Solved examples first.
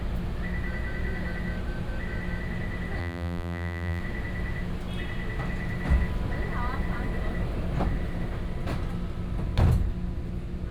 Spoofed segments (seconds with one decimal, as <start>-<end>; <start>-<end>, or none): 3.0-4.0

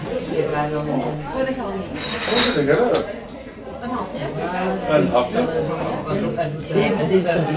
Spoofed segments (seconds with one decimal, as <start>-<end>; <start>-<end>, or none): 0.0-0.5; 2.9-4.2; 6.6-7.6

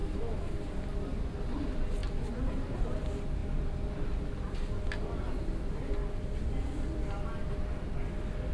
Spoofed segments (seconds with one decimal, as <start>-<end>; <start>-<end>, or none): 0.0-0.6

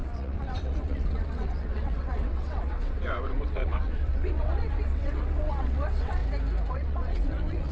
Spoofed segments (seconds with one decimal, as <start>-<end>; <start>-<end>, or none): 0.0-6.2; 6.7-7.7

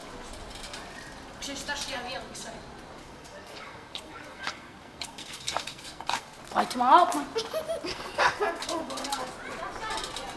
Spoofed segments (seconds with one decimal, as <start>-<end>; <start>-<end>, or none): 3.0-6.4; 7.9-9.3

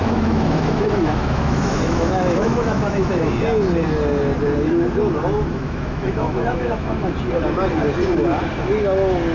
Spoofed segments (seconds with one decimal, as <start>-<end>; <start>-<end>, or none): 0.0-3.3; 5.5-7.1

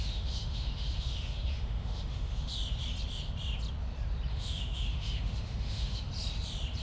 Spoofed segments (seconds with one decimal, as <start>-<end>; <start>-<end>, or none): 0.0-2.5; 4.3-6.1